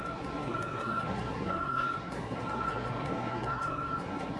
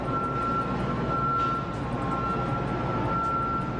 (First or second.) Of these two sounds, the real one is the second